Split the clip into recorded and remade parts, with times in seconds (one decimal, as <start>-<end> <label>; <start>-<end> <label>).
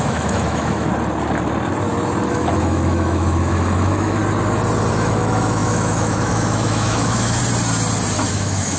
0.0-0.9 remade; 0.9-2.3 recorded; 2.3-4.2 remade; 4.2-4.9 recorded; 4.9-7.4 remade; 7.4-8.3 recorded; 8.3-8.8 remade